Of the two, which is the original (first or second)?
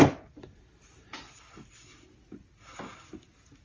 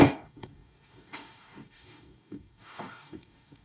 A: first